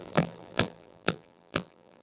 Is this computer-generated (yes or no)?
yes